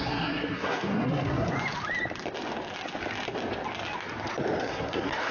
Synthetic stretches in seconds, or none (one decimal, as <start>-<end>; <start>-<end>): 0.0-1.5; 4.6-5.3